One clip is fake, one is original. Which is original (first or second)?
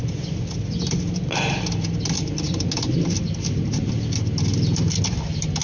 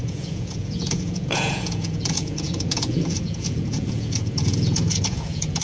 first